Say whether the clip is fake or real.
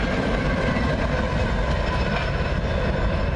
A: real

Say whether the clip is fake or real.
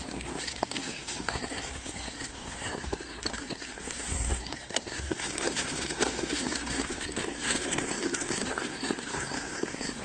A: fake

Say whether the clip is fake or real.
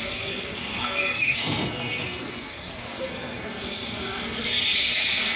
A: fake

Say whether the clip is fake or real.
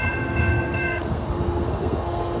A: fake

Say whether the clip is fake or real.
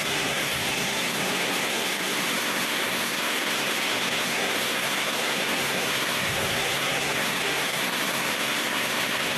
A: fake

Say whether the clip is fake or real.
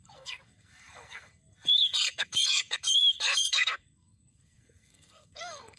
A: fake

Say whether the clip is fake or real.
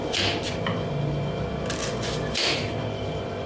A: real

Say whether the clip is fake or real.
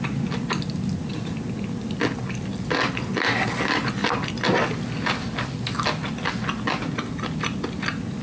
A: real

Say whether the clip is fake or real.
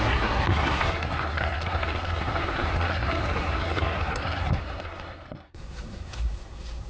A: fake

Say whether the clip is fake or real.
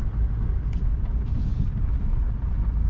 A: real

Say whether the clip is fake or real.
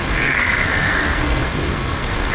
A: fake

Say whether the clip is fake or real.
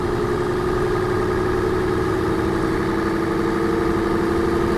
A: real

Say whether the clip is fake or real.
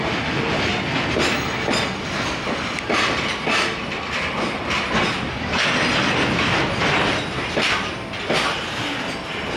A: real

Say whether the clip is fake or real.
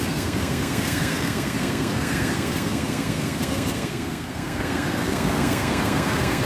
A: fake